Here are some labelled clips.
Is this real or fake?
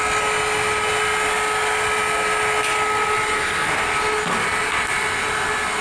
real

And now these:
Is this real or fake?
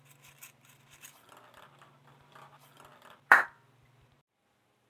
fake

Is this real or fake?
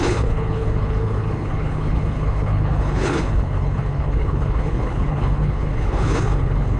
fake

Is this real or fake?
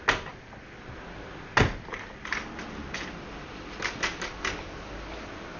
real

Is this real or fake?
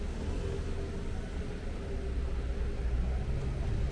real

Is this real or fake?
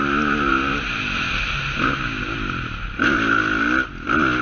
real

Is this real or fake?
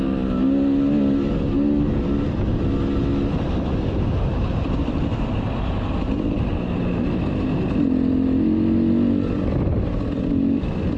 real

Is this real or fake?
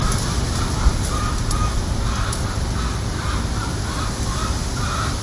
real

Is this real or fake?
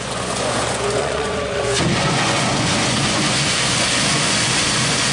fake